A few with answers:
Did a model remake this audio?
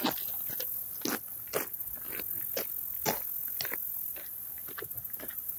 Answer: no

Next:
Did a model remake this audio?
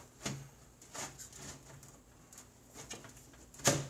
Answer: no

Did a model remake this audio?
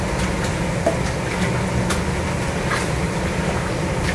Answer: no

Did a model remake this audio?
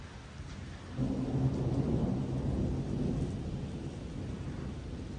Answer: no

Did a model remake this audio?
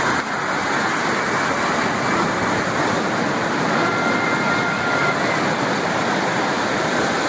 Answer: no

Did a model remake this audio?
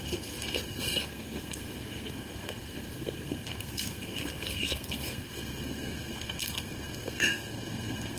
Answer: yes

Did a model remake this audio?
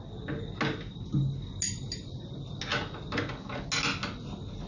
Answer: no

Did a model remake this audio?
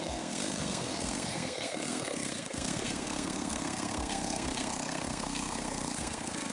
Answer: yes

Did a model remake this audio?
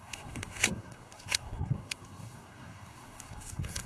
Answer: yes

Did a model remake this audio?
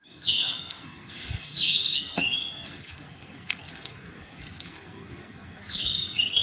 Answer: yes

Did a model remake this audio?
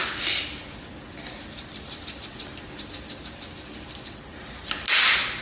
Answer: no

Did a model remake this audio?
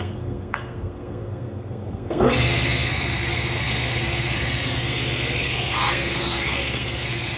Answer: yes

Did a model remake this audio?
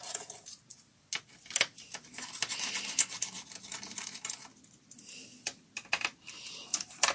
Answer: no